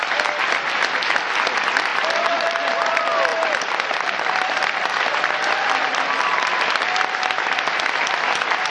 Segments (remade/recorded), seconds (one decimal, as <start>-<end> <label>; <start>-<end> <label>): 0.0-1.9 recorded; 1.9-2.7 remade; 2.7-3.3 recorded; 3.3-6.5 remade; 6.5-8.7 recorded